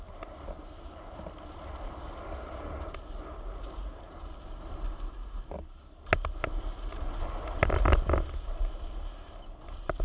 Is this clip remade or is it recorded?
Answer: recorded